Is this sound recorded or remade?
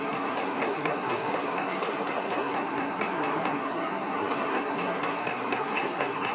remade